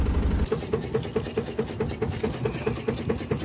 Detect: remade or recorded recorded